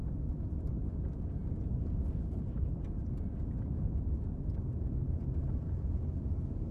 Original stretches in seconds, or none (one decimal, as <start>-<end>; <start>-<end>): 0.0-6.7